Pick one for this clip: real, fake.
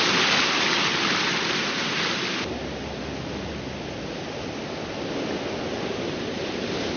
real